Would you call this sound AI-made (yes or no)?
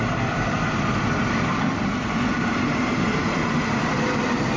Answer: no